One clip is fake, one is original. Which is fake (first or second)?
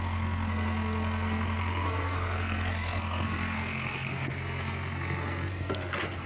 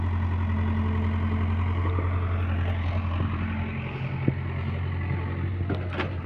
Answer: first